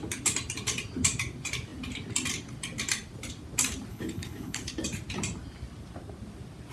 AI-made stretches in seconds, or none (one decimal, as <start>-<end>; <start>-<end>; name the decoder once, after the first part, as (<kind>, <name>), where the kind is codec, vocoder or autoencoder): 3.9-4.6 (codec, HILCodec)